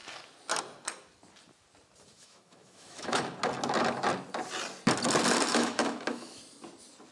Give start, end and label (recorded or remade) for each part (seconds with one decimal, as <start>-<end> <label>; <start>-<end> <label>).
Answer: 0.0-2.1 recorded; 2.1-3.2 remade; 3.2-5.5 recorded; 5.5-6.4 remade; 6.4-7.1 recorded